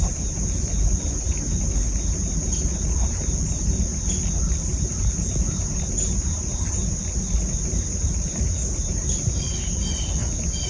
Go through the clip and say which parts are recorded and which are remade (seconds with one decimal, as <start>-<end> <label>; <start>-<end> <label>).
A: 0.0-10.7 recorded